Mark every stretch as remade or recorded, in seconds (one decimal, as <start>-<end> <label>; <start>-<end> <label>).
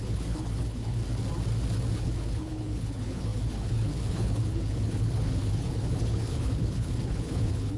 0.0-1.0 remade; 1.0-1.9 recorded; 1.9-7.8 remade